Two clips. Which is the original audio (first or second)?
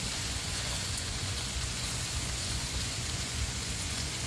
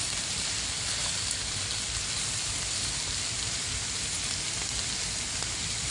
second